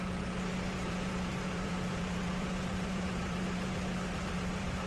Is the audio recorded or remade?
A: remade